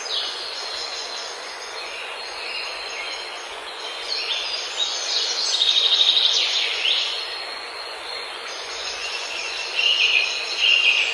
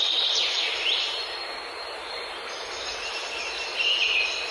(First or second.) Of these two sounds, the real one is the second